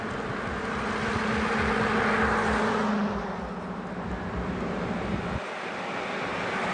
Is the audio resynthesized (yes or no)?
no